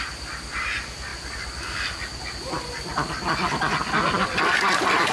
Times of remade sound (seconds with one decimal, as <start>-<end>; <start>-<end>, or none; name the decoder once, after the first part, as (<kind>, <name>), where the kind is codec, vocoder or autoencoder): none